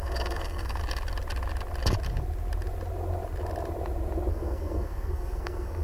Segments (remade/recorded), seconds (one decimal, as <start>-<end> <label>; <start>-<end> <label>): 0.0-0.8 remade; 0.8-4.3 recorded; 4.3-5.8 remade